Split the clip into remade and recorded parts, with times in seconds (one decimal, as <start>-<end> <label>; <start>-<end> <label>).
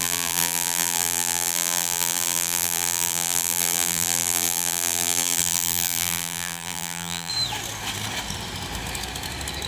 0.0-7.3 remade; 7.3-9.7 recorded